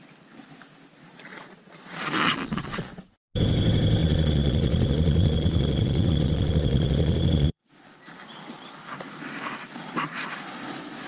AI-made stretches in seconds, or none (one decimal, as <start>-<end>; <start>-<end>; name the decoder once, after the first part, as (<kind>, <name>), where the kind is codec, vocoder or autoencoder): 1.3-2.9 (vocoder, Vocos); 4.0-7.7